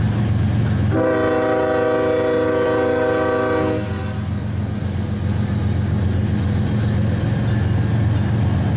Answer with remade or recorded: recorded